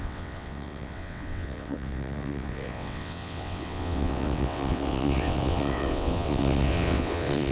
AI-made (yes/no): yes